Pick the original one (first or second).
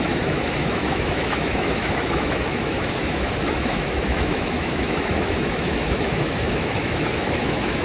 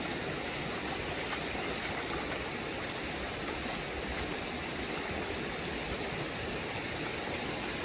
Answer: second